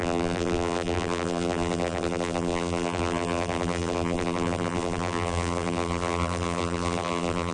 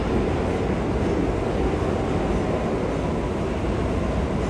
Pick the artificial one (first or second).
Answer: first